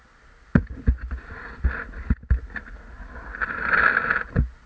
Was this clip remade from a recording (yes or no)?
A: no